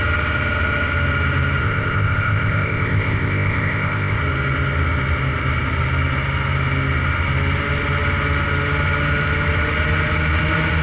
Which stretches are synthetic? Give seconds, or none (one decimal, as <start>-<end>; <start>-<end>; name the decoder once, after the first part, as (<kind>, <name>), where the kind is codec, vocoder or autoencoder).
1.6-4.2 (codec, ZipCodec)